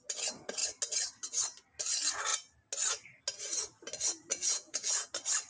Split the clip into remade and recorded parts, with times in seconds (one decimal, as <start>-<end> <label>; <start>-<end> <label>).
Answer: 0.0-4.3 recorded; 4.3-5.1 remade; 5.1-5.5 recorded

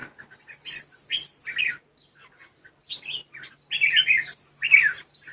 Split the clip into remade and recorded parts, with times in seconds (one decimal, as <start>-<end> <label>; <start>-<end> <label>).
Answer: 0.0-5.3 recorded

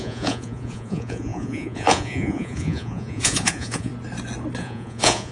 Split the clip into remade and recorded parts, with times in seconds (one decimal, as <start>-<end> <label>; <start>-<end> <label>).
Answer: 0.0-3.9 remade; 3.9-4.6 recorded; 4.6-5.3 remade

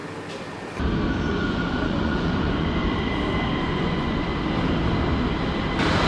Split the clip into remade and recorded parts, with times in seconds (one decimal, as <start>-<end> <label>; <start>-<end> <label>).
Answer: 0.0-1.3 recorded; 1.3-2.8 remade; 2.8-3.6 recorded; 3.6-4.3 remade; 4.3-6.1 recorded